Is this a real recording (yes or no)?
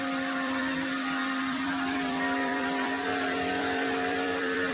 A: no